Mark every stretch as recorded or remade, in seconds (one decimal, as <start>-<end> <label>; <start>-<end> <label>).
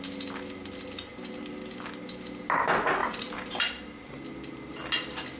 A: 0.0-5.4 recorded